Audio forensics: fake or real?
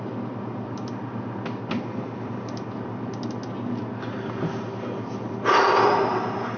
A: real